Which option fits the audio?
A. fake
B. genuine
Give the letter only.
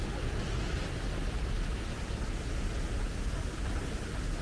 B